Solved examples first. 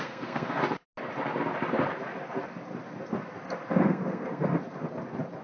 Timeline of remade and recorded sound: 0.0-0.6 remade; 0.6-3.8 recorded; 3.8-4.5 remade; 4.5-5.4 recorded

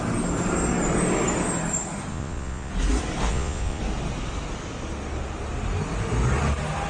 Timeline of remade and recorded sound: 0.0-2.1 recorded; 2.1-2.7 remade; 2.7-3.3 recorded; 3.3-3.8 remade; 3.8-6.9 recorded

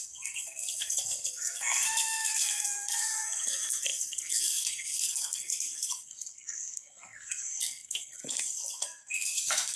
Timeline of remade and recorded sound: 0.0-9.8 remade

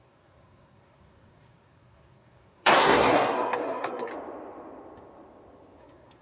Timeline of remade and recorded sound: 0.0-4.1 remade; 4.1-5.8 recorded; 5.8-6.2 remade

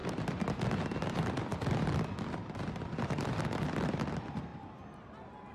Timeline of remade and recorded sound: 0.0-0.8 recorded; 0.8-4.5 remade; 4.5-5.5 recorded